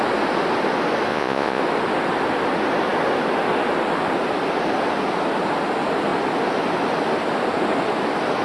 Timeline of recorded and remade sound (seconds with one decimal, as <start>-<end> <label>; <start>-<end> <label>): 0.0-1.1 recorded; 1.1-1.6 remade; 1.6-8.4 recorded